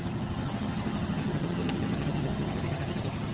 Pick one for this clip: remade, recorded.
remade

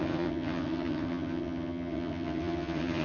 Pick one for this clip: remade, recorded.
remade